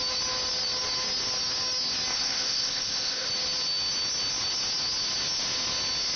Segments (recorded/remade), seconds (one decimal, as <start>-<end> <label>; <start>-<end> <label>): 0.0-2.1 recorded; 2.1-3.3 remade; 3.3-6.2 recorded